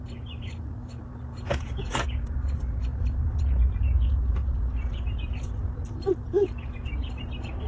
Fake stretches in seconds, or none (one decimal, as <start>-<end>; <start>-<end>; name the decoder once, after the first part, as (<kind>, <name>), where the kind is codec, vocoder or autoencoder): 1.3-2.0 (vocoder, Vocos)